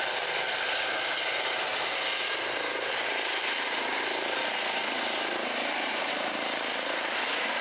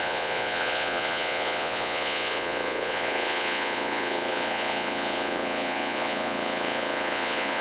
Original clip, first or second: first